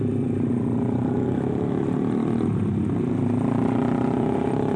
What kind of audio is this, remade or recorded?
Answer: recorded